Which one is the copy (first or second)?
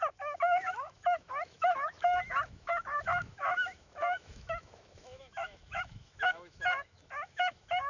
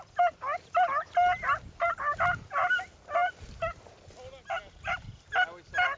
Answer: first